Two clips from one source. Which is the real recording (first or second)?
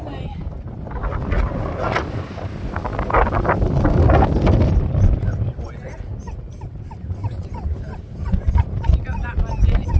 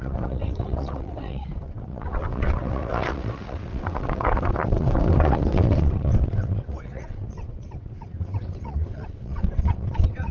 first